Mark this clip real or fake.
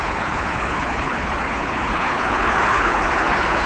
fake